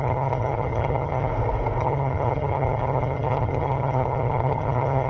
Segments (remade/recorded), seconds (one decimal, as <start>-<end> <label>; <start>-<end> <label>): 0.0-1.3 remade; 1.3-1.8 recorded; 1.8-5.1 remade